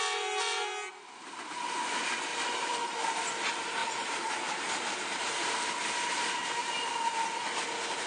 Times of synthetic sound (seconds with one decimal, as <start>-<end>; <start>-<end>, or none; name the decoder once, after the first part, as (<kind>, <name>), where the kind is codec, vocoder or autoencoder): 2.3-3.2 (vocoder, BigVGAN v2); 3.8-5.4